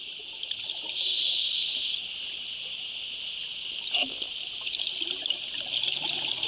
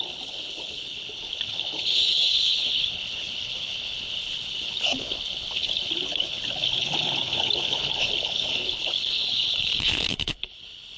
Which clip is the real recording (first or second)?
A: first